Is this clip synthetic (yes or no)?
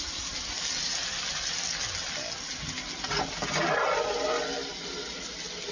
no